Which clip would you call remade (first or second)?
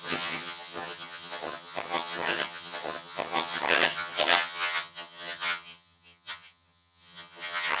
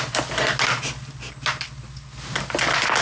first